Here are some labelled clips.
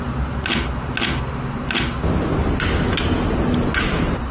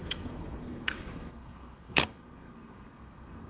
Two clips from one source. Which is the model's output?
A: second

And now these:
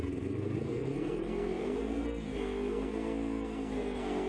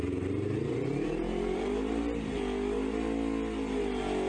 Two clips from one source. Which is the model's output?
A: first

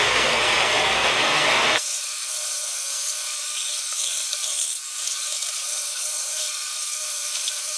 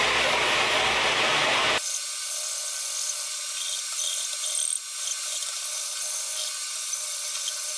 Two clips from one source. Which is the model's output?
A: first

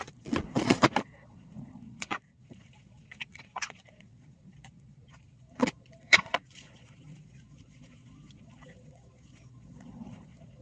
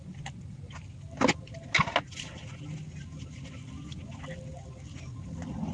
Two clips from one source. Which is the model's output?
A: first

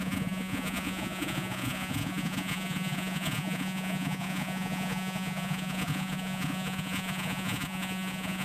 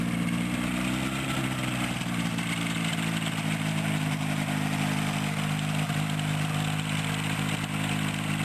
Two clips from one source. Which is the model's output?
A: first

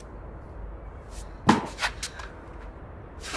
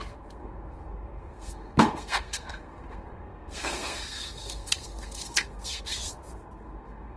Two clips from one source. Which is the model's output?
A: second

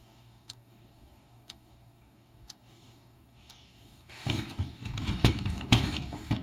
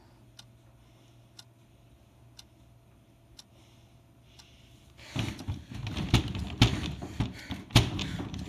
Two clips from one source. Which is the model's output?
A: first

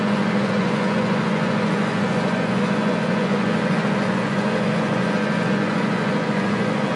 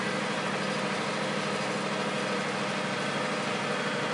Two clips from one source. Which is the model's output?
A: first